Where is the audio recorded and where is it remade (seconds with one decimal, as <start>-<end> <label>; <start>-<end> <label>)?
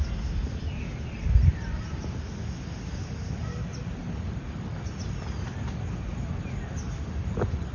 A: 0.0-7.7 recorded